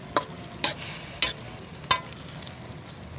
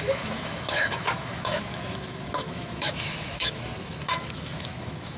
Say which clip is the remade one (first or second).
second